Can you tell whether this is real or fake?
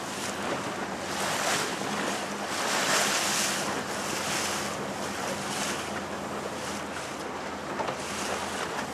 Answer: real